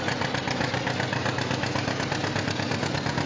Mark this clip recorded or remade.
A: recorded